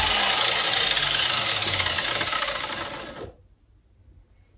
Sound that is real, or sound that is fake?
real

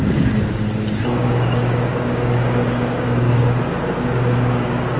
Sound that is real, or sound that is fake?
fake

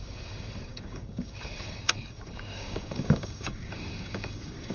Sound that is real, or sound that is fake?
fake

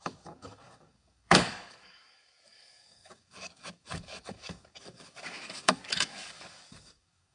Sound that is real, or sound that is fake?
fake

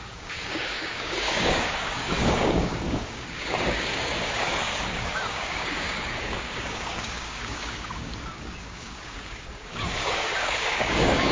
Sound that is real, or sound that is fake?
fake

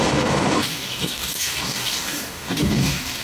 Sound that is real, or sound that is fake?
fake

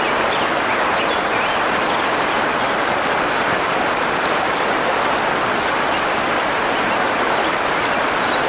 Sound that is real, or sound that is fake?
real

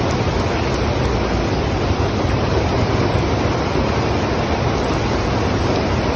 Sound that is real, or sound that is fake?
real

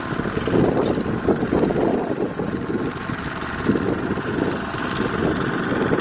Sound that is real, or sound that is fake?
real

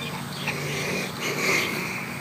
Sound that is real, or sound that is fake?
fake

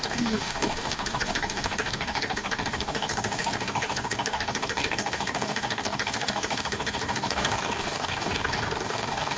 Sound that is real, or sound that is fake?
fake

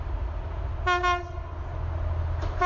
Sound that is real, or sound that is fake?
real